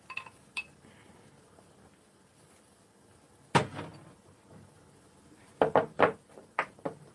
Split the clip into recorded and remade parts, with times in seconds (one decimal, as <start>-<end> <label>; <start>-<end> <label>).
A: 0.0-7.1 recorded